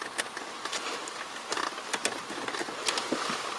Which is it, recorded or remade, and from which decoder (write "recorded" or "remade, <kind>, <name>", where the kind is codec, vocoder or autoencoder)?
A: recorded